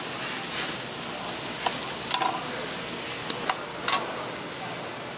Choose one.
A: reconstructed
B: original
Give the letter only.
B